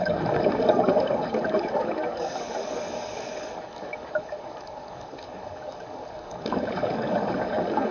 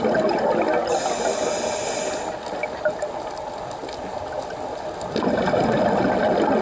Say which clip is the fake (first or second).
first